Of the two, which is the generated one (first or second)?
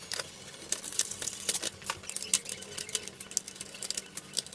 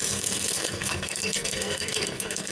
second